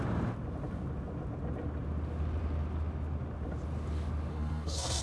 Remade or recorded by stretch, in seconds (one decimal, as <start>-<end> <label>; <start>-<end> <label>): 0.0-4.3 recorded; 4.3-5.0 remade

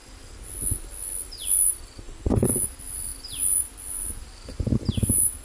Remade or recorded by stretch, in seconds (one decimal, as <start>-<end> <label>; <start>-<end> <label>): 0.0-5.4 recorded

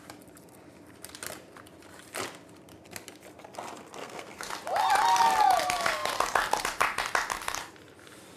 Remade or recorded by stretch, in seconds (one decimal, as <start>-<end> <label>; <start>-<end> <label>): 0.0-4.0 recorded; 4.0-4.5 remade; 4.5-8.4 recorded

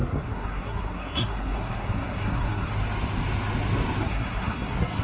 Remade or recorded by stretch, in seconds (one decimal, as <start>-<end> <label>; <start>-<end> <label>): 0.0-2.7 remade; 2.7-4.0 recorded; 4.0-5.0 remade

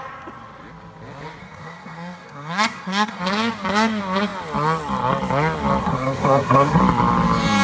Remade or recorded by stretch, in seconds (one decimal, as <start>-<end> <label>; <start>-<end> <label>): 0.0-1.4 recorded; 1.4-3.2 remade; 3.2-5.8 recorded; 5.8-6.8 remade; 6.8-7.6 recorded

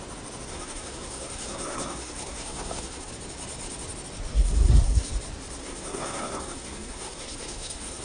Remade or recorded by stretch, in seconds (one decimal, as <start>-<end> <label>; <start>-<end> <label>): 0.0-0.5 recorded; 0.5-3.1 remade; 3.1-4.3 recorded; 4.3-5.1 remade; 5.1-5.6 recorded; 5.6-8.0 remade